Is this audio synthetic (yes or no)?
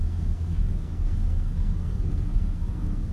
yes